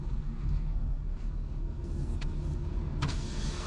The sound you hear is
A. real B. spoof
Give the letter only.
B